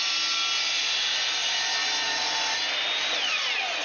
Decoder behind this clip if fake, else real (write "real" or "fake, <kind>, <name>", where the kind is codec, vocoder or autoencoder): real